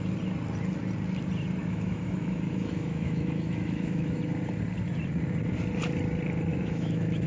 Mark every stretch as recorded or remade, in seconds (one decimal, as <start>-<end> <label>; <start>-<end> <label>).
0.0-1.6 recorded; 1.6-4.2 remade; 4.2-6.5 recorded; 6.5-7.3 remade